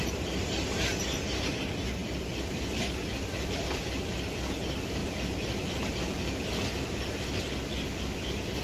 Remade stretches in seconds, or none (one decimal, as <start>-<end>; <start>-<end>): none